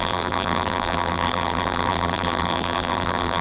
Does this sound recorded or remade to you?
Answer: remade